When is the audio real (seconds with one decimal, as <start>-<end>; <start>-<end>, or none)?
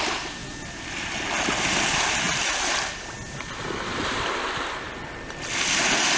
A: 0.0-6.2